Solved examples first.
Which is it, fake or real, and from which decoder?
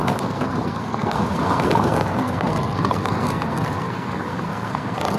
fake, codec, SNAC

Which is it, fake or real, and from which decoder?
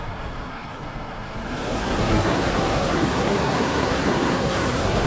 fake, codec, SNAC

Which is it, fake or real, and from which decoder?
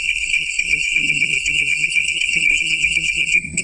fake, codec, SNAC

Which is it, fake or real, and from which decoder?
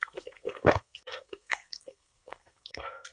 fake, codec, SNAC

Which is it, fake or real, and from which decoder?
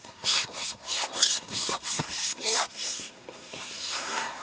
fake, codec, SNAC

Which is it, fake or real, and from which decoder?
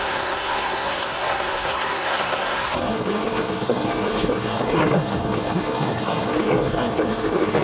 fake, codec, SNAC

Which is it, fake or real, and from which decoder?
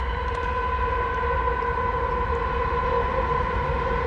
real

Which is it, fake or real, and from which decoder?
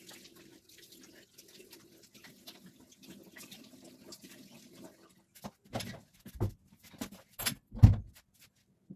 real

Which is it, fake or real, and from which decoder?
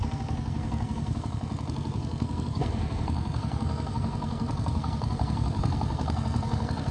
fake, codec, SNAC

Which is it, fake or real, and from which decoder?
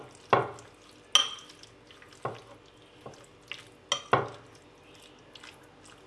real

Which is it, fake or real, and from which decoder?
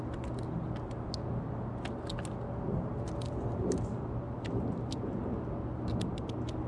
real